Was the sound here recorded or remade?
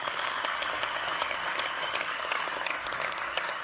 remade